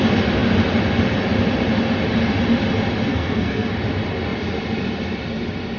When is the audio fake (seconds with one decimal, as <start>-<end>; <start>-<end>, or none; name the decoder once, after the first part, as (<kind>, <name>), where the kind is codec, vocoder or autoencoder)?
3.1-3.7 (codec, SNAC)